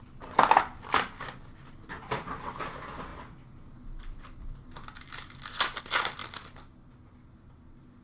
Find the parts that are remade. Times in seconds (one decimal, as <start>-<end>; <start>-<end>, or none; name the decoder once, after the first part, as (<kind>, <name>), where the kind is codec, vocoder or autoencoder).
none